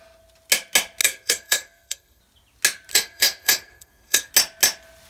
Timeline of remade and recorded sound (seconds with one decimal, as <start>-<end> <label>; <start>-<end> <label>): 0.0-1.0 recorded; 1.0-2.2 remade; 2.2-2.9 recorded; 2.9-4.3 remade; 4.3-5.1 recorded